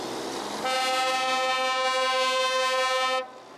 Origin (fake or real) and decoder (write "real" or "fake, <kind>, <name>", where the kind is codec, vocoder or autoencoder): real